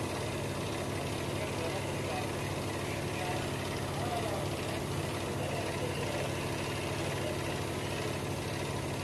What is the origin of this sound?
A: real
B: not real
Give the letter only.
A